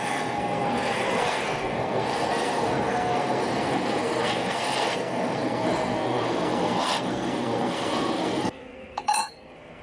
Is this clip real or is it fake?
fake